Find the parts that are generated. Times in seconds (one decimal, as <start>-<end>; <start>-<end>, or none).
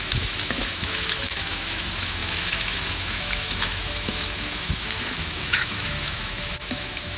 0.0-7.2